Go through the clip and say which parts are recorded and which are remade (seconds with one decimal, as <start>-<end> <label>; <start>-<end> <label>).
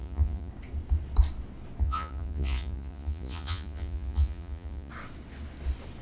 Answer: 0.0-0.5 remade; 0.5-1.8 recorded; 1.8-4.9 remade; 4.9-6.0 recorded